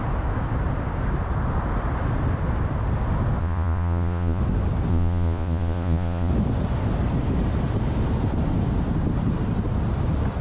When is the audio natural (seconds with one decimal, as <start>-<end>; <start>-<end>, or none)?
0.0-3.4; 4.4-4.9; 6.3-10.4